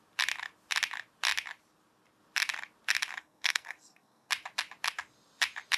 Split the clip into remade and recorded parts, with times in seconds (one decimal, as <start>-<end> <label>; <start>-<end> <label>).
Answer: 0.0-3.2 recorded; 3.2-4.3 remade; 4.3-5.8 recorded